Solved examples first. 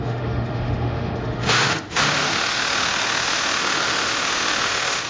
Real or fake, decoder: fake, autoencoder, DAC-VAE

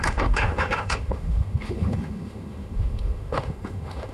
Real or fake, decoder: fake, autoencoder, DAC-VAE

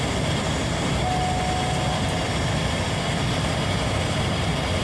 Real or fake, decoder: real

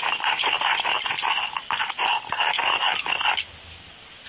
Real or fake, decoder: real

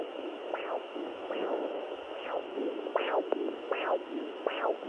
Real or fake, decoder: fake, autoencoder, DAC-VAE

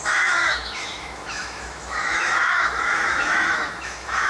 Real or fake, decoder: fake, autoencoder, DAC-VAE